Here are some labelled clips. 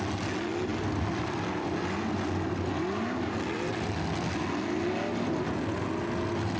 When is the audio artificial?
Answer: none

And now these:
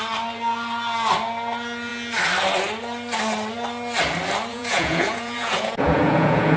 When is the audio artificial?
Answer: 4.5-6.6 (vocoder, Vocos)

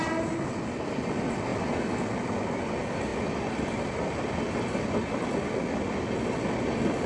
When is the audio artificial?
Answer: none